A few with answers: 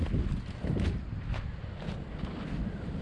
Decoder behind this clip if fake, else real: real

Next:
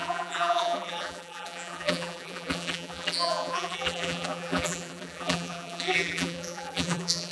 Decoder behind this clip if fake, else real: fake, vocoder, BigVGAN v2